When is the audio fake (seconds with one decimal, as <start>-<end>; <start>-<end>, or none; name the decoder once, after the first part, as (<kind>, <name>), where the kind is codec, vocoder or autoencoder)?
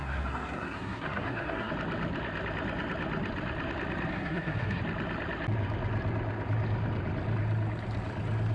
0.0-1.7 (codec, SNAC); 4.1-4.8